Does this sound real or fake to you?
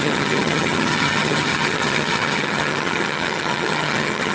fake